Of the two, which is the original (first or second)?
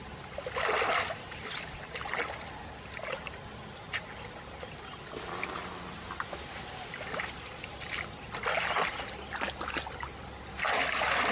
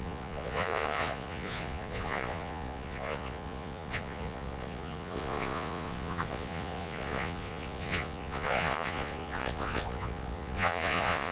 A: first